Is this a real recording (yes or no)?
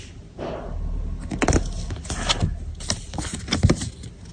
yes